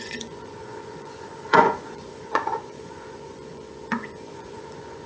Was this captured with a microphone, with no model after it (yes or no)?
no